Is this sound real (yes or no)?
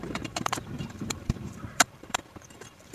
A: no